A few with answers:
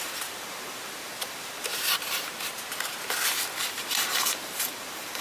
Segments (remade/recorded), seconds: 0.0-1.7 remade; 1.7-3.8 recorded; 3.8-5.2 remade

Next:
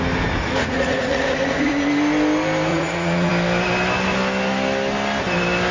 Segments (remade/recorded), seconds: 0.0-0.6 recorded; 0.6-1.7 remade; 1.7-2.7 recorded; 2.7-3.3 remade; 3.3-5.7 recorded